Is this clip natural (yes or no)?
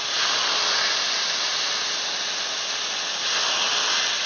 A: yes